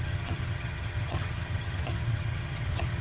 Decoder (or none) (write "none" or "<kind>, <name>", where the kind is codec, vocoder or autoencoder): vocoder, HiFi-GAN